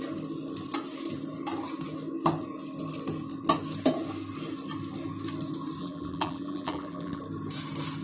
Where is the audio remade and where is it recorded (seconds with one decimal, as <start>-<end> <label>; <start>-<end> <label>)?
0.0-5.8 recorded; 5.8-7.2 remade; 7.2-8.0 recorded